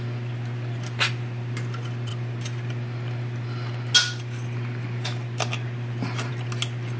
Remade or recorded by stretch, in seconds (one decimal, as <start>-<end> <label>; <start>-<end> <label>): 0.0-7.0 recorded